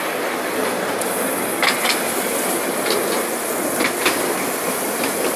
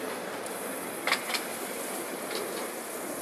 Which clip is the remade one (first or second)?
second